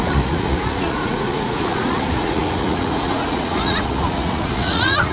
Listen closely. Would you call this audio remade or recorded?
remade